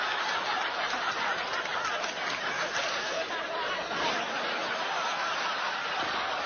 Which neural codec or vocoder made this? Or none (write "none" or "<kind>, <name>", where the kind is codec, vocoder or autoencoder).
none